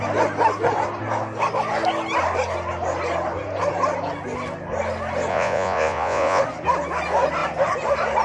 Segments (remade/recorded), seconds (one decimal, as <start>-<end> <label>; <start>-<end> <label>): 0.0-5.3 recorded; 5.3-6.4 remade; 6.4-8.2 recorded